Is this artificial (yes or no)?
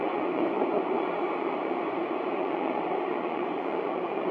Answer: yes